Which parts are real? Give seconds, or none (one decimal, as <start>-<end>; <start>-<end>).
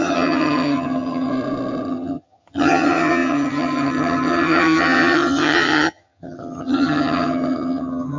1.3-1.9